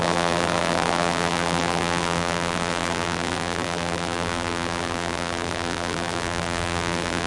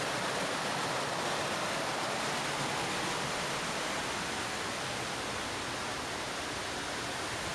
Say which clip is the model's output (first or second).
first